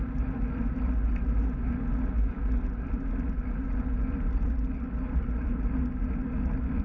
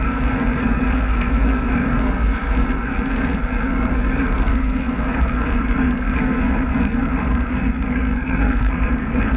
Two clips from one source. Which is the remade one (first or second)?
second